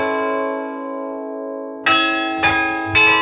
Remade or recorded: recorded